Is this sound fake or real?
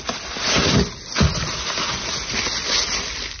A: real